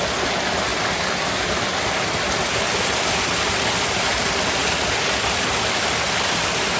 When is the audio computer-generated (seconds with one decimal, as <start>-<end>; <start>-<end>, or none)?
none

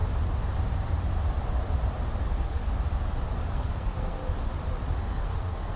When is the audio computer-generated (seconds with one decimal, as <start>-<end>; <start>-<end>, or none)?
2.2-2.6; 3.5-4.2; 5.0-5.8

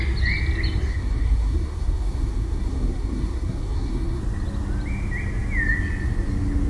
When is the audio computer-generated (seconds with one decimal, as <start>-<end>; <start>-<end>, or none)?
0.9-4.2

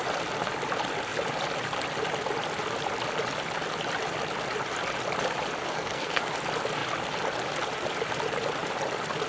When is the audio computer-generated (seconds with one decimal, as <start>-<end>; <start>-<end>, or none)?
5.6-6.3